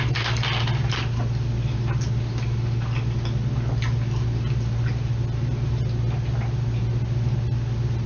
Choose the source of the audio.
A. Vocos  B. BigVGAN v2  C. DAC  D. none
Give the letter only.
D